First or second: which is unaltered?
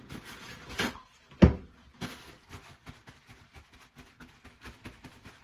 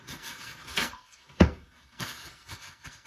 first